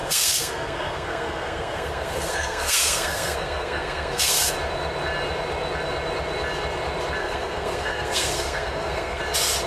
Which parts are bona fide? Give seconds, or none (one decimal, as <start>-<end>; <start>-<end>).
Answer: 4.5-7.2; 9.2-9.7